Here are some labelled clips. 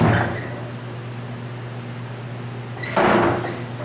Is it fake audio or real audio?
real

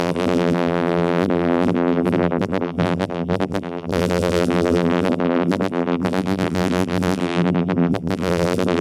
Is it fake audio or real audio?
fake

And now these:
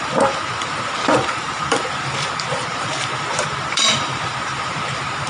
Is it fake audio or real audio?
fake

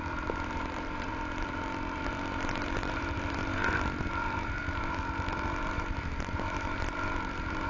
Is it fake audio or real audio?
fake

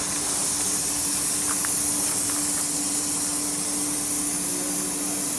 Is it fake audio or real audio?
real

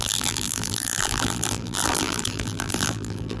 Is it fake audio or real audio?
fake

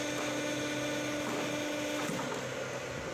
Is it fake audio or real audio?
real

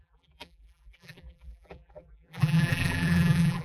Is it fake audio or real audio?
fake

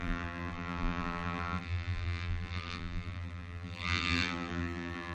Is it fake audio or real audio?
fake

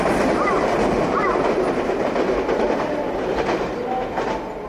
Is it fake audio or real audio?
real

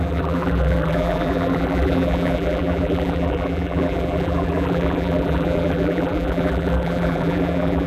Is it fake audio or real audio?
fake